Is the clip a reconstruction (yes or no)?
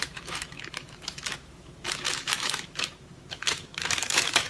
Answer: yes